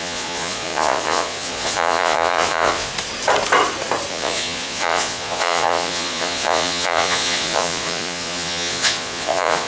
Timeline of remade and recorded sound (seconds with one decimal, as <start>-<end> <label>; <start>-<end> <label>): 0.0-2.9 remade; 2.9-4.1 recorded; 4.1-9.7 remade